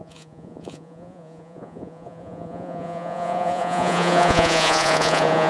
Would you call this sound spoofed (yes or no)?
yes